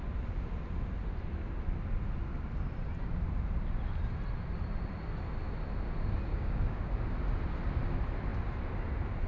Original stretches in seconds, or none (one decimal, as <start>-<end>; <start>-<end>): 0.0-6.3; 6.9-9.3